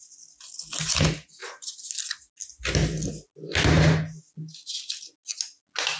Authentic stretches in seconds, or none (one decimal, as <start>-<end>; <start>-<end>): 0.0-6.0